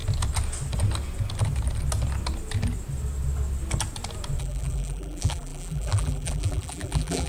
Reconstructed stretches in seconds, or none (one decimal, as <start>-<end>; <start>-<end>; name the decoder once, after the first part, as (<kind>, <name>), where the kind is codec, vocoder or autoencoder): 4.4-7.3 (vocoder, BigVGAN v2)